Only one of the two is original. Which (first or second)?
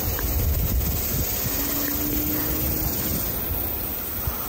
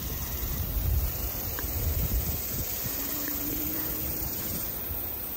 first